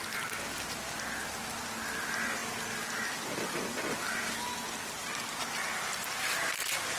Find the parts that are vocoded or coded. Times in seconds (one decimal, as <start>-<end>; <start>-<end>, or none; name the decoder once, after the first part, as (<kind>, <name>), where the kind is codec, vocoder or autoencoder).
none